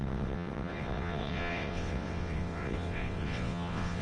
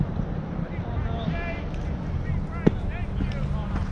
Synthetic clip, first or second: first